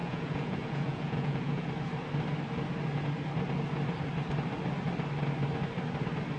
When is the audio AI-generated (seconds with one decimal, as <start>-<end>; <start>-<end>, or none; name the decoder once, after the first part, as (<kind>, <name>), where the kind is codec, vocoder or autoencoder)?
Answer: 0.0-1.7 (vocoder, Vocos)